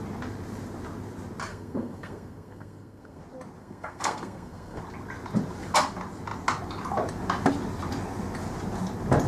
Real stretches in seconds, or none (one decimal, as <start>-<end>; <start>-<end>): 0.0-1.5; 3.2-3.6; 4.8-9.3